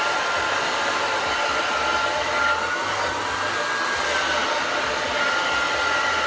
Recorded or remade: recorded